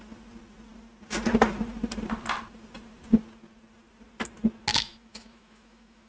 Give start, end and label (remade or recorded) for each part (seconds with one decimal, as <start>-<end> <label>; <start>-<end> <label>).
0.0-4.7 recorded; 4.7-6.1 remade